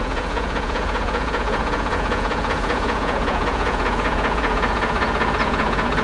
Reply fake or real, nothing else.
fake